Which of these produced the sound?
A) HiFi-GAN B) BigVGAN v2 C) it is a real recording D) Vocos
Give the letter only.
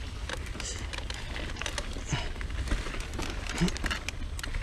C